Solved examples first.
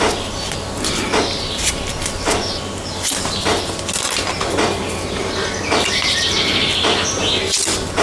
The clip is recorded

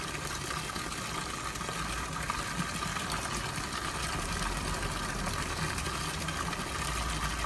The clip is recorded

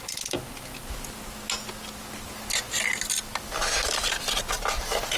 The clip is recorded